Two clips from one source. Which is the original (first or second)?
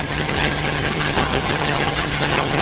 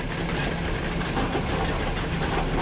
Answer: second